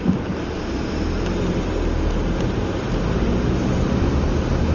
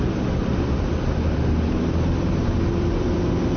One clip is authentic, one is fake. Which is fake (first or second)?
second